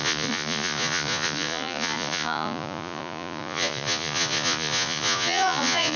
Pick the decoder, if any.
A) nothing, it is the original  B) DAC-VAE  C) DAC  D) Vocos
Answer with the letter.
D